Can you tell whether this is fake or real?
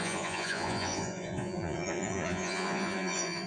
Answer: fake